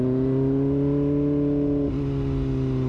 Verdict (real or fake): real